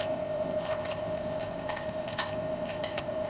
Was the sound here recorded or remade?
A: remade